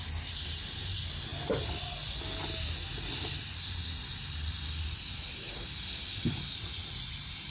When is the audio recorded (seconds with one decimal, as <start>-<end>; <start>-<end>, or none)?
0.0-7.5